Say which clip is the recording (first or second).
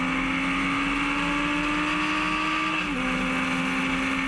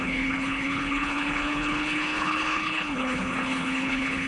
first